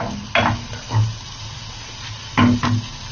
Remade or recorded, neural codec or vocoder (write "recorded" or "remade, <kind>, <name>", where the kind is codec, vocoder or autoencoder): recorded